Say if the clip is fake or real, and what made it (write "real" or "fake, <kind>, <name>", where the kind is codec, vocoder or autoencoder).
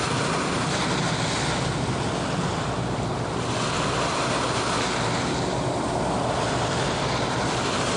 real